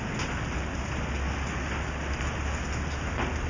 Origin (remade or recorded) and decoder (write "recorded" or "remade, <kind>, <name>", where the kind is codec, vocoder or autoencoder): recorded